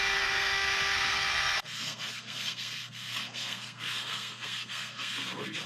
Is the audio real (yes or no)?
no